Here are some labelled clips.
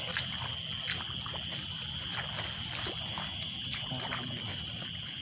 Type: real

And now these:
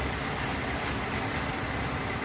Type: real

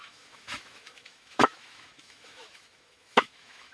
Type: fake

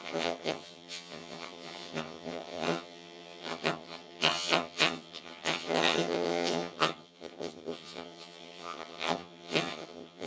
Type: fake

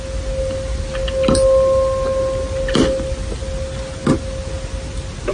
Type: real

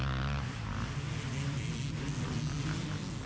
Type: real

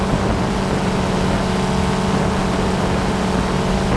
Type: real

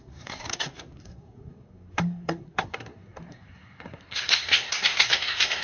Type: fake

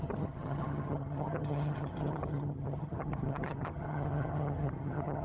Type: fake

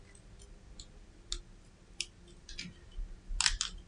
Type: real